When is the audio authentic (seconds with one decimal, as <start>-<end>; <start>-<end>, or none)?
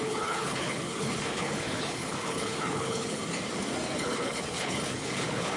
3.2-4.0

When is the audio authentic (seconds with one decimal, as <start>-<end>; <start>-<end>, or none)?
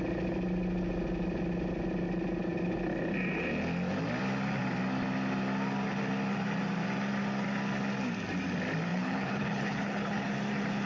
0.0-8.9; 10.3-10.9